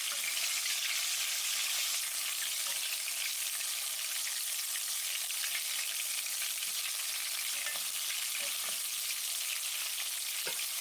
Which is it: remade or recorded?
recorded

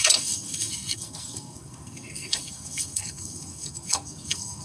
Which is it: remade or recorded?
remade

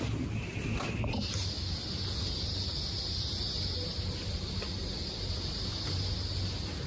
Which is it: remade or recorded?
recorded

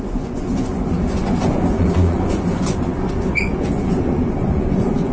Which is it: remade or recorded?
remade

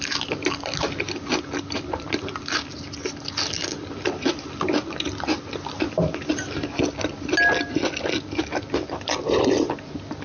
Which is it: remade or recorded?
recorded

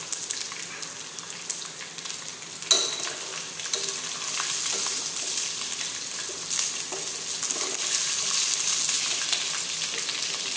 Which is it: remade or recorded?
recorded